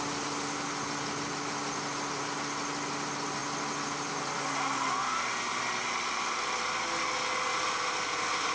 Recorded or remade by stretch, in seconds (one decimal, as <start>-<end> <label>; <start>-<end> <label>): 0.0-8.5 recorded